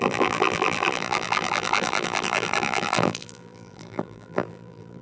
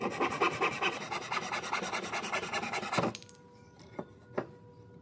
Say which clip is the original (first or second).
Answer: second